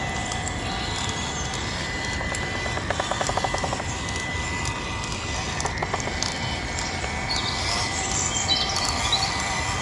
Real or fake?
real